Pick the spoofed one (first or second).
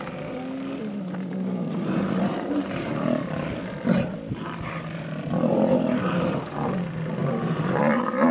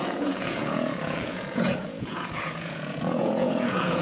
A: second